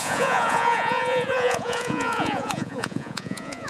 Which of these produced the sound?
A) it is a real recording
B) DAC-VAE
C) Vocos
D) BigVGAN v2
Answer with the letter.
C